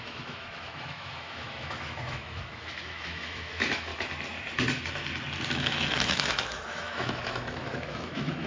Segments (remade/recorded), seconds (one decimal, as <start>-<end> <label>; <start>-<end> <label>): 0.0-3.9 remade; 3.9-5.5 recorded; 5.5-8.5 remade